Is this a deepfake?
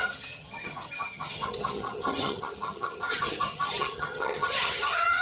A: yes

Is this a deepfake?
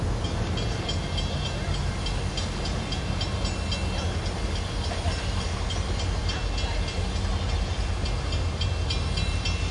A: no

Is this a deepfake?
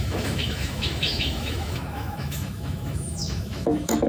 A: yes